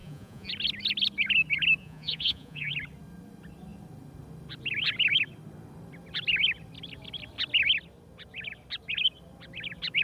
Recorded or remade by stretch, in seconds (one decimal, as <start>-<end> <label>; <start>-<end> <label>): 0.0-0.5 remade; 0.5-1.8 recorded; 1.8-2.7 remade; 2.7-10.0 recorded